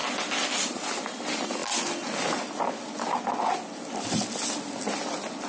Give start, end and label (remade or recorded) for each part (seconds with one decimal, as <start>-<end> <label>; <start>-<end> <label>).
0.0-1.0 remade; 1.0-5.5 recorded